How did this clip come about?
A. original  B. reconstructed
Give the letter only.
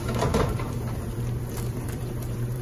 B